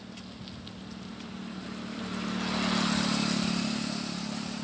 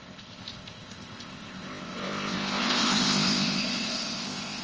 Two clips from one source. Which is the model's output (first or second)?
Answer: second